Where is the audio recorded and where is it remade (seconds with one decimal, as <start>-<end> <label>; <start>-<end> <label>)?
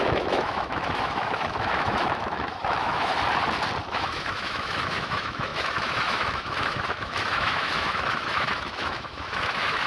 0.0-3.1 remade; 3.1-3.8 recorded; 3.8-9.9 remade